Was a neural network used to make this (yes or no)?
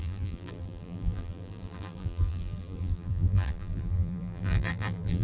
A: yes